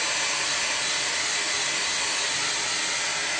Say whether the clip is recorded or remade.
recorded